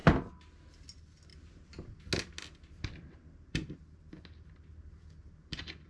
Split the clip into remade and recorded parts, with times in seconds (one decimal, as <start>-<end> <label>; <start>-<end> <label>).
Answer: 0.0-5.9 recorded